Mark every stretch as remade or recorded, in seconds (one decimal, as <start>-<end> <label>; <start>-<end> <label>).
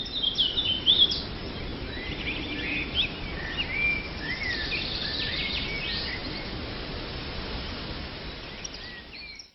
0.0-9.5 recorded